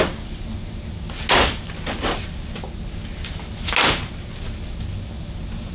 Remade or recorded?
recorded